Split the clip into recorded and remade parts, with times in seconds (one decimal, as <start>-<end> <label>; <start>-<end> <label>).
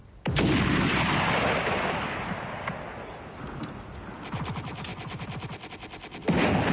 0.0-6.7 recorded